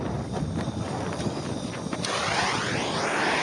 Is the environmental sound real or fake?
real